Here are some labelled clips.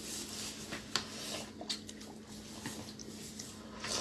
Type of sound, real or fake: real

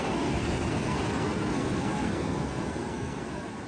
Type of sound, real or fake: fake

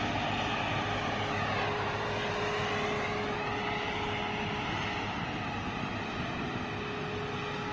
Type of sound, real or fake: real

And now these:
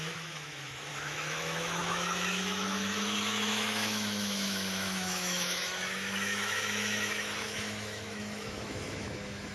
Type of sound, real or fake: fake